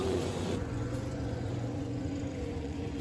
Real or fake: fake